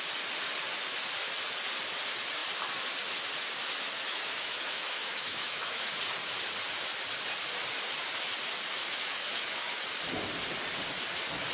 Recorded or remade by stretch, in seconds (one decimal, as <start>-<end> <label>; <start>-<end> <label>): 0.0-4.1 recorded; 4.1-5.9 remade; 5.9-8.8 recorded; 8.8-9.8 remade; 9.8-11.5 recorded